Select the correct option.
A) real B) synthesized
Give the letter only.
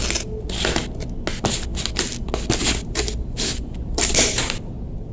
A